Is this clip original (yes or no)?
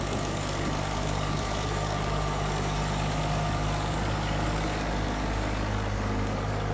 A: no